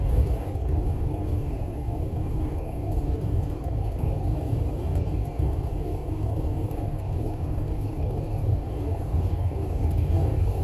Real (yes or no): no